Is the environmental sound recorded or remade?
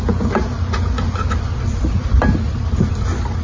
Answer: recorded